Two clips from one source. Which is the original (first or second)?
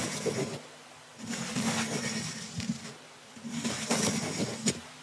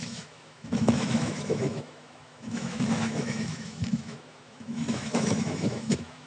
first